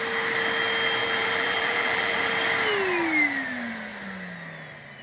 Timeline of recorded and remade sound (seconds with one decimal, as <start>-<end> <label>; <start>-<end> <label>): 0.0-1.0 recorded; 1.0-2.3 remade; 2.3-5.0 recorded